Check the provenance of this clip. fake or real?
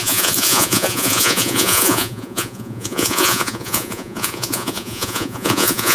fake